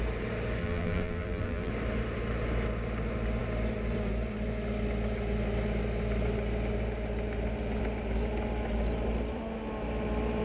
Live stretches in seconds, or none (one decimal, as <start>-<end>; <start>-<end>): 0.0-0.6; 1.7-10.4